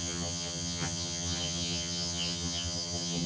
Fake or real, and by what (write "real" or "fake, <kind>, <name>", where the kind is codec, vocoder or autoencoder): fake, vocoder, HiFi-GAN